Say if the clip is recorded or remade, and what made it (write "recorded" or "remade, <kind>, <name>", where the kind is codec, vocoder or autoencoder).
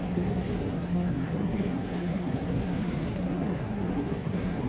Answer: remade, codec, SNAC